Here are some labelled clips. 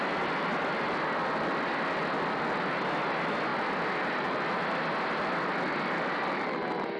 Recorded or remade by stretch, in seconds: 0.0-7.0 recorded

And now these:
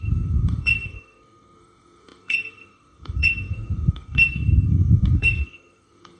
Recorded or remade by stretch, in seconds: 0.0-6.2 remade

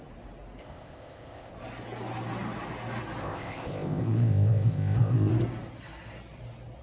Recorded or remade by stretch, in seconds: 0.0-0.6 recorded; 0.6-1.5 remade; 1.5-3.2 recorded; 3.2-5.3 remade; 5.3-6.8 recorded

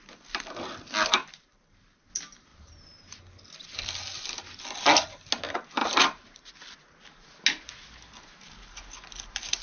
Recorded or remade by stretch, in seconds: 0.0-1.2 recorded; 1.2-2.1 remade; 2.1-2.5 recorded; 2.5-3.0 remade; 3.0-5.8 recorded; 5.8-6.4 remade; 6.4-9.6 recorded

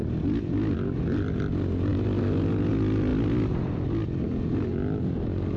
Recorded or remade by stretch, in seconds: 0.0-5.6 recorded

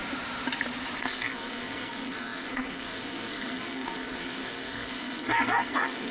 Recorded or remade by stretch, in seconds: 0.0-1.0 recorded; 1.0-6.1 remade